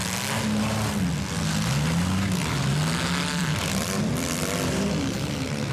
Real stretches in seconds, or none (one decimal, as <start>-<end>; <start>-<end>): 0.0-5.7